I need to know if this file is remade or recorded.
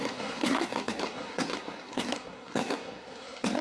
remade